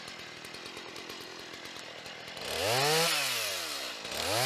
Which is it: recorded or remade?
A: recorded